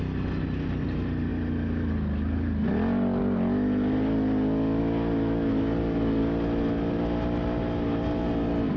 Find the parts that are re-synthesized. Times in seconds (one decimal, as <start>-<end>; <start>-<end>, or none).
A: none